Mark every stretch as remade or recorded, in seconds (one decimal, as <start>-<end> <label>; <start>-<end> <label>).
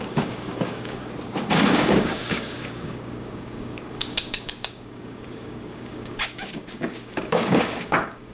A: 0.0-1.0 remade; 1.0-1.5 recorded; 1.5-8.3 remade